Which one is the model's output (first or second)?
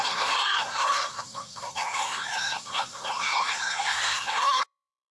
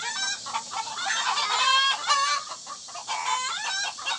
first